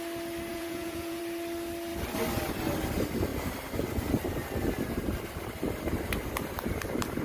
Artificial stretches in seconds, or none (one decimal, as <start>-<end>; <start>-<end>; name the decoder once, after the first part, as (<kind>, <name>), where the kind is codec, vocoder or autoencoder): 0.5-1.2 (vocoder, Vocos)